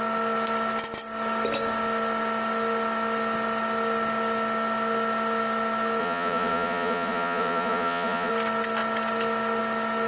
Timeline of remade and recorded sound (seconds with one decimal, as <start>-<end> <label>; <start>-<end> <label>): 0.0-6.0 recorded; 6.0-8.3 remade; 8.3-10.1 recorded